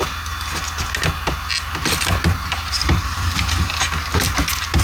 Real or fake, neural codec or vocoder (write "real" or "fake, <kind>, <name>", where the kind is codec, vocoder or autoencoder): real